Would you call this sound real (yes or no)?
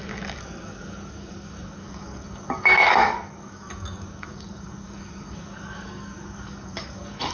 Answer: no